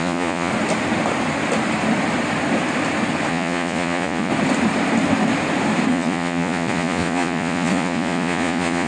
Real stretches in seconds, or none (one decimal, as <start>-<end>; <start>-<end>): 0.5-3.3; 4.3-5.9